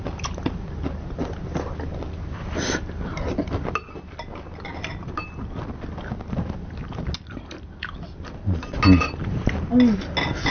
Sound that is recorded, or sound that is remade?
recorded